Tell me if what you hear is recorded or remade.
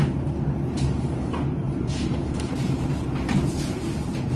remade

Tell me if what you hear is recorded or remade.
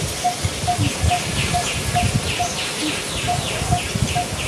recorded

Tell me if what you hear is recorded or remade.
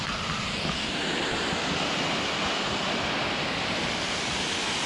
recorded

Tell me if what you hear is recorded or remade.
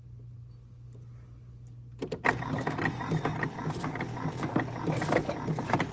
recorded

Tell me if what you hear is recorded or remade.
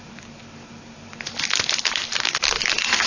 recorded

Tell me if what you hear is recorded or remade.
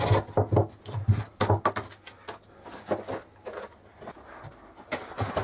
recorded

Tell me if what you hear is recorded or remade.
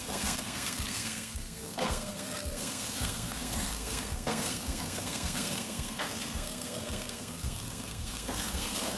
remade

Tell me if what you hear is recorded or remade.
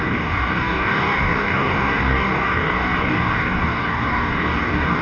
remade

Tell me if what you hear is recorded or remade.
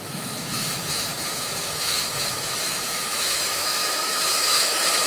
remade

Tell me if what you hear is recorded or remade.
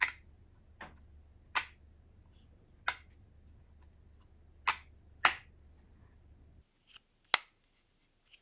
recorded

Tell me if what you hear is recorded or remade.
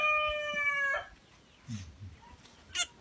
recorded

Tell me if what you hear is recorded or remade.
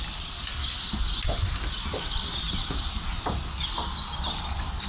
recorded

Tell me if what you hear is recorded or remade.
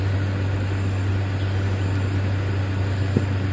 recorded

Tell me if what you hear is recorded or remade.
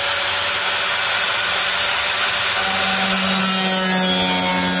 recorded